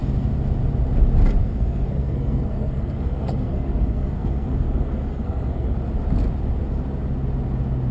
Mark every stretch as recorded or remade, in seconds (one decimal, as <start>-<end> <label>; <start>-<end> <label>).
0.0-1.4 recorded; 1.4-5.8 remade; 5.8-7.9 recorded

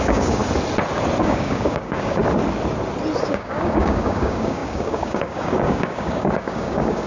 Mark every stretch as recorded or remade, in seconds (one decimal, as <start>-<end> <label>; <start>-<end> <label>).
0.0-0.4 remade; 0.4-1.2 recorded; 1.2-2.2 remade; 2.2-3.2 recorded; 3.2-7.1 remade

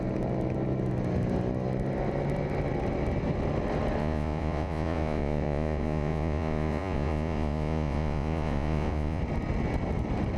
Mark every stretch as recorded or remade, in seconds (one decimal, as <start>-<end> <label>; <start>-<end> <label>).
0.0-4.0 recorded; 4.0-9.2 remade; 9.2-10.4 recorded

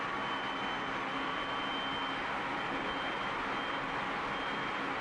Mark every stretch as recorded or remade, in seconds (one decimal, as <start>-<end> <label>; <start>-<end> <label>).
0.0-5.0 recorded

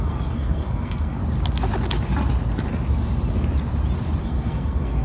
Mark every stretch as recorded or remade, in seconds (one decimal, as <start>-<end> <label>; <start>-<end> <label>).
0.0-1.2 remade; 1.2-4.2 recorded; 4.2-5.0 remade